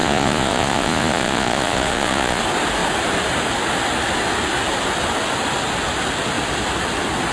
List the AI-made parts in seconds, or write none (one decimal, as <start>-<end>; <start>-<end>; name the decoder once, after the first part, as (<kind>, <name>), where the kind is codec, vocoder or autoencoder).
0.0-2.4 (vocoder, Vocos)